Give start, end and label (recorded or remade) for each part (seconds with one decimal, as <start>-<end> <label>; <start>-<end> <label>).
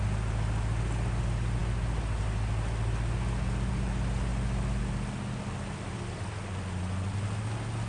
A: 0.0-7.9 recorded